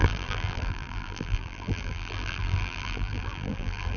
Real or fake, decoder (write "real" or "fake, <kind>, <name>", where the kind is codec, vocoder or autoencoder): fake, vocoder, BigVGAN v2